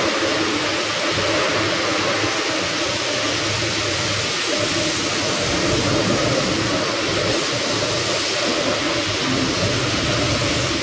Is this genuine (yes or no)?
yes